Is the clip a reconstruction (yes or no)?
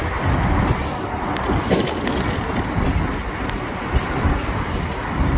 no